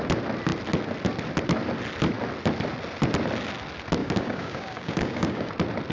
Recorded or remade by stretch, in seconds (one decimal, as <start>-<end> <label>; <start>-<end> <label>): 0.0-4.0 recorded; 4.0-5.5 remade; 5.5-5.9 recorded